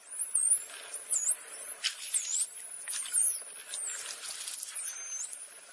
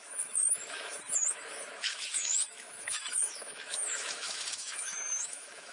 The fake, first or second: second